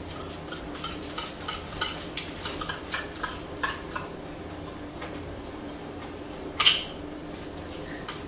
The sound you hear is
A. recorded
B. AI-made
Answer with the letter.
B